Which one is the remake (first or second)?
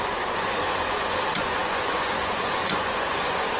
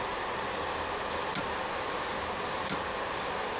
first